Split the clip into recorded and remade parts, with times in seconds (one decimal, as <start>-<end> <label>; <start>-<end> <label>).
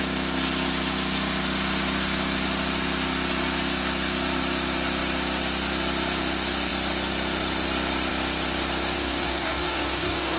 0.0-9.0 recorded; 9.0-10.4 remade